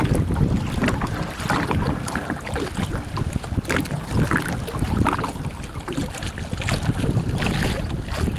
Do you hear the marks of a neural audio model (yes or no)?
no